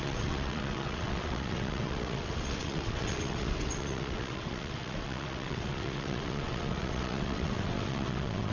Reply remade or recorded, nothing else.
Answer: remade